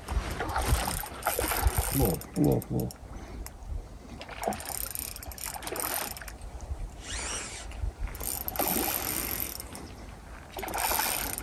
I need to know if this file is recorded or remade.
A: recorded